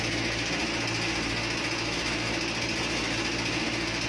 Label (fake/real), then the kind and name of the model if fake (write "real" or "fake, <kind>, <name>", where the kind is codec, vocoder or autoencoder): real